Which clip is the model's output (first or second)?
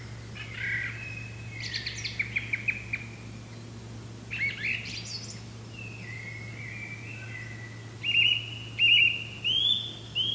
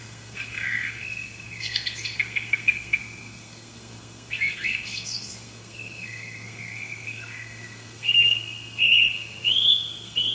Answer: second